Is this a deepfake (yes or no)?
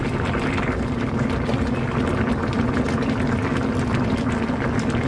no